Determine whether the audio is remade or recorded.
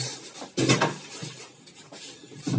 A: recorded